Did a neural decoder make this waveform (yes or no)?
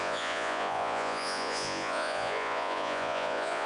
yes